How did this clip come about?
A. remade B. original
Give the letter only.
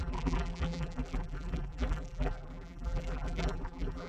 A